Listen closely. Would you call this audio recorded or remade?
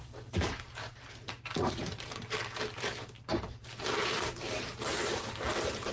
remade